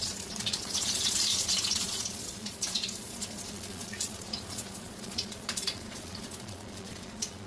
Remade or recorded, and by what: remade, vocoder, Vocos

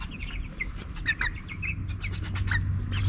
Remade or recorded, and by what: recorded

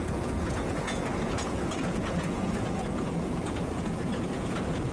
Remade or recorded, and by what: remade, vocoder, Vocos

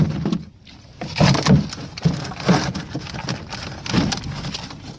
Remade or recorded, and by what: recorded